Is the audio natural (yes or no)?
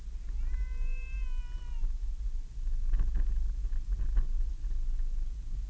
yes